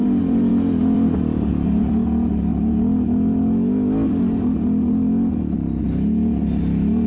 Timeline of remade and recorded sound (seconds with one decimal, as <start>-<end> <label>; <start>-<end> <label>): 0.0-2.5 remade; 2.5-7.1 recorded